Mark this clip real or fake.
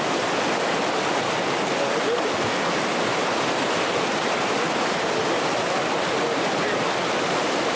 real